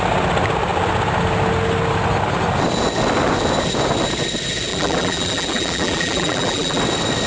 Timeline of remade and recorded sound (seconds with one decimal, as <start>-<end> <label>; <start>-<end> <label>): 0.0-4.7 recorded; 4.7-6.8 remade; 6.8-7.3 recorded